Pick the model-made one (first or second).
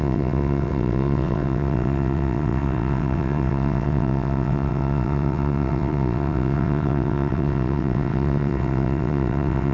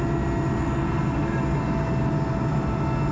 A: first